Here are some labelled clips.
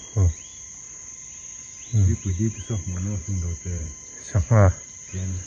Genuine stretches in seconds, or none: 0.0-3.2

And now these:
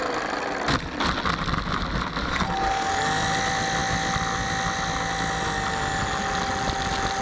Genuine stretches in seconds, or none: 0.0-2.3; 2.9-7.2

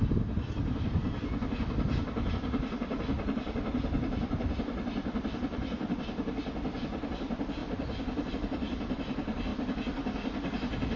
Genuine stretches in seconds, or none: 1.0-2.3; 7.6-8.3; 9.5-11.0

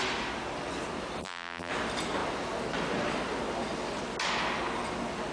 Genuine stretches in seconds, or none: 0.0-1.2; 1.7-5.3

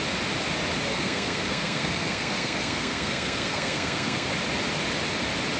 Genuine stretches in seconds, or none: 0.0-0.9; 4.3-5.6